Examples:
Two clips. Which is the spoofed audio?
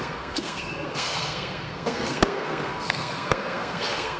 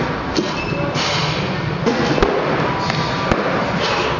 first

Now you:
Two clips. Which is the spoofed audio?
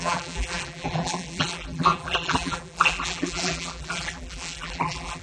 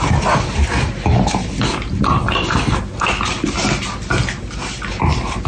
first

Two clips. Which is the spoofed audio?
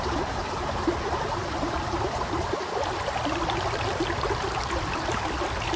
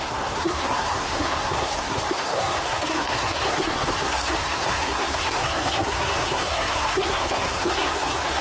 second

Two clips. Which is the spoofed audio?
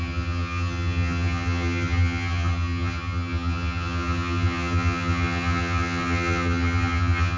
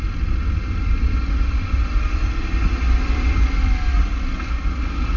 first